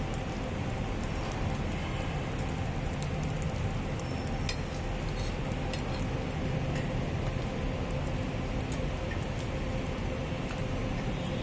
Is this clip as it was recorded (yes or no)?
yes